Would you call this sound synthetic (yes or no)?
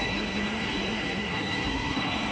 yes